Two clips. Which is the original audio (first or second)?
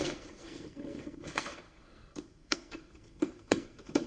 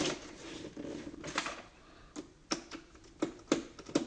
second